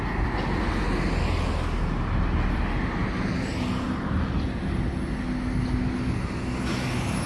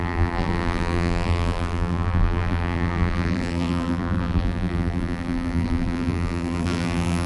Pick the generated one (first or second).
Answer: second